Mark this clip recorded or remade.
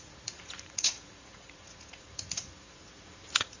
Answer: remade